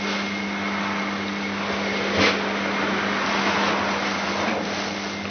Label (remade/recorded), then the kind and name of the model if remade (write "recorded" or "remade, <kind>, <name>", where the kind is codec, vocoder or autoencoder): recorded